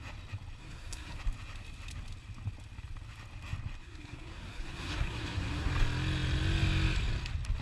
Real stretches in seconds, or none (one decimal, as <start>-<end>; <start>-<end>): 0.0-0.6; 1.2-3.8; 5.7-7.6